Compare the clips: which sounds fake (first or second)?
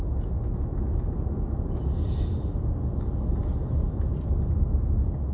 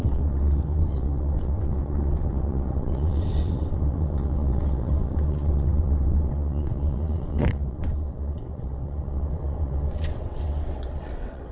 second